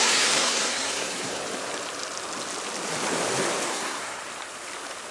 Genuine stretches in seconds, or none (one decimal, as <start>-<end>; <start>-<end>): 1.4-3.7; 4.2-5.1